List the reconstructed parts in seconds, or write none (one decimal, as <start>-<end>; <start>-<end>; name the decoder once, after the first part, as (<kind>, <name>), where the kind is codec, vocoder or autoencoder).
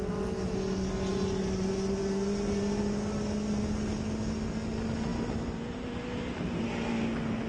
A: 5.1-6.9 (vocoder, BigVGAN v2)